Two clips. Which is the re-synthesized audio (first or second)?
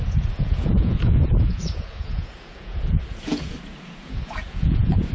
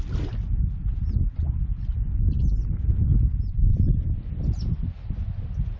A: first